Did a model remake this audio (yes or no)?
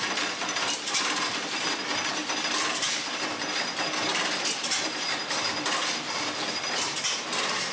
no